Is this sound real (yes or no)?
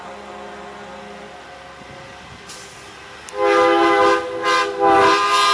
yes